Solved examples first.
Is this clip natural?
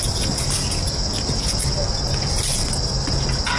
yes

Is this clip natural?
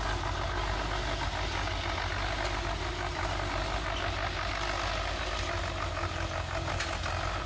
yes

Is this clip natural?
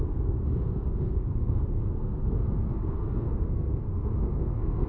no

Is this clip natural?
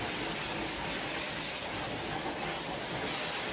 yes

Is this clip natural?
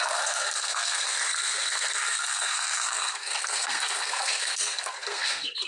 no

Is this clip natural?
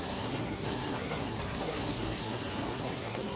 no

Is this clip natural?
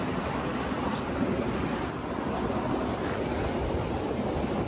yes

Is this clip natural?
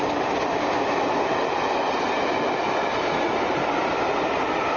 yes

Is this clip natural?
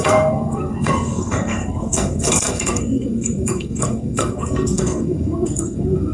no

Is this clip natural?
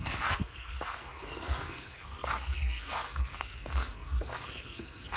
no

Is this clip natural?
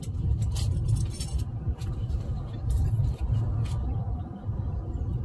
yes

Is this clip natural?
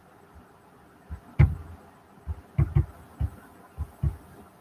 yes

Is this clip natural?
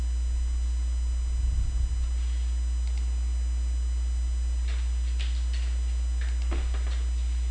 yes